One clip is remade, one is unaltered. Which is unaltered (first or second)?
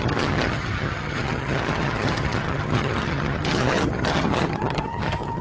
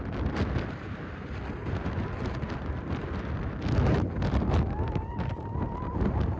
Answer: second